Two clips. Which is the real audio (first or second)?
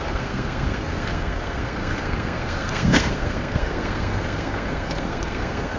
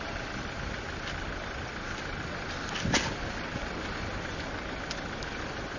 second